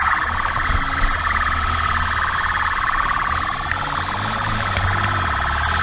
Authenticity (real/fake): real